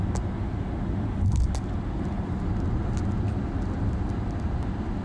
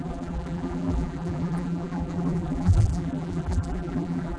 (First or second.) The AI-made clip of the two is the second